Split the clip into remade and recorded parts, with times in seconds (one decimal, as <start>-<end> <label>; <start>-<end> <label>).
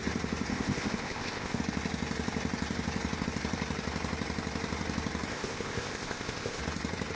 0.0-0.5 recorded; 0.5-1.6 remade; 1.6-5.3 recorded; 5.3-6.6 remade; 6.6-7.2 recorded